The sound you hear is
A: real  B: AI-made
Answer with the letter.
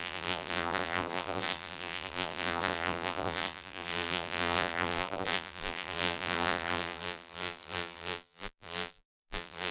B